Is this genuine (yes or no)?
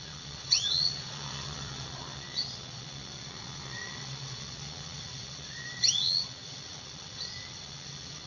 no